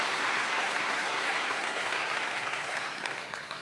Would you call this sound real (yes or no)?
no